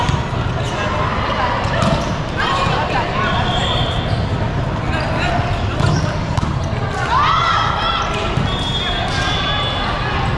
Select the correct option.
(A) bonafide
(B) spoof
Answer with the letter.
A